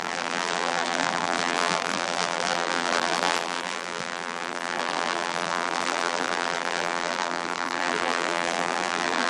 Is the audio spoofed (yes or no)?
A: yes